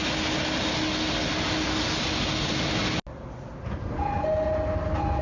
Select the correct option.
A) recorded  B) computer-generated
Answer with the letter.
A